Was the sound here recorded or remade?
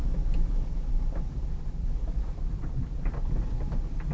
remade